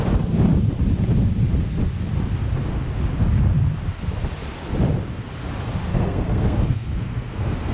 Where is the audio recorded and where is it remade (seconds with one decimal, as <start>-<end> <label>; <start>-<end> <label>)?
0.0-5.9 recorded; 5.9-7.7 remade

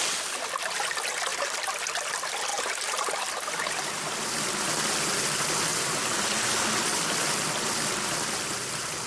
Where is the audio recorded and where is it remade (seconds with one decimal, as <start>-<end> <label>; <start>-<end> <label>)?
0.0-2.5 recorded; 2.5-3.1 remade; 3.1-9.1 recorded

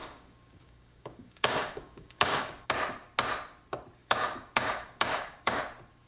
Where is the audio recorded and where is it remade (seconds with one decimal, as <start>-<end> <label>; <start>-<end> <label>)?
0.0-2.7 remade; 2.7-4.0 recorded; 4.0-5.6 remade; 5.6-6.1 recorded

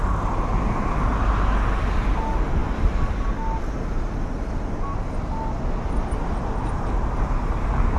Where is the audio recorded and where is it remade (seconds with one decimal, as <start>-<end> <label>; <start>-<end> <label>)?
0.0-8.0 recorded